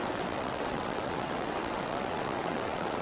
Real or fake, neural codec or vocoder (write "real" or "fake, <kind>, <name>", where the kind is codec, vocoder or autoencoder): fake, vocoder, WaveNeXt